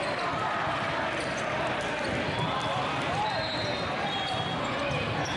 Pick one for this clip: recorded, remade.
recorded